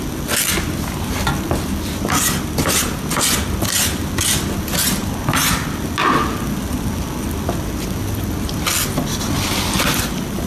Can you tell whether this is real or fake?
real